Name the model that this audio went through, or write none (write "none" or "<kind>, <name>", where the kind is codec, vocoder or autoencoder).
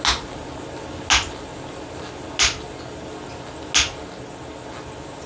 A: none